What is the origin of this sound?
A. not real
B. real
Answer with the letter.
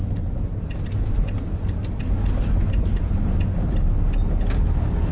B